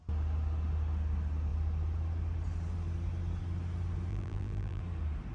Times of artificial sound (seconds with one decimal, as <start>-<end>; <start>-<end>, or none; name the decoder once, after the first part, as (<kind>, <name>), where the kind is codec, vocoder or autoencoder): 4.1-4.8 (vocoder, BigVGAN v2)